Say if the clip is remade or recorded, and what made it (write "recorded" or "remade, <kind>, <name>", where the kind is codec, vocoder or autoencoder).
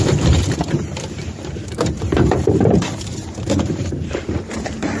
remade, vocoder, BigVGAN v2